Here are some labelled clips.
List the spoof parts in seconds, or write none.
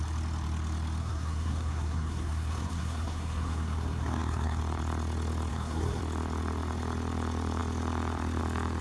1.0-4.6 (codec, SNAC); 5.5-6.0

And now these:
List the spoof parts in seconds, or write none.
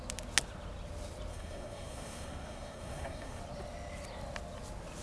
1.3-3.4 (codec, SNAC)